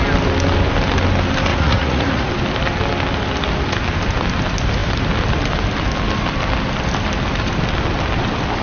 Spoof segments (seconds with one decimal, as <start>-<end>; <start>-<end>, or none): 1.5-2.3